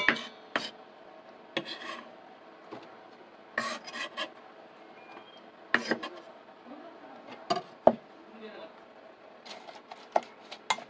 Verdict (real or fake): real